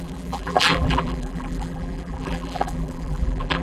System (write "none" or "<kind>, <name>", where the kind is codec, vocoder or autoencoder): vocoder, BigVGAN v2